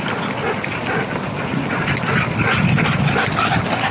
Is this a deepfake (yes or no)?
no